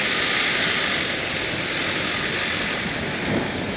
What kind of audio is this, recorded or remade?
recorded